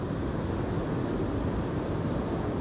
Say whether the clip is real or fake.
real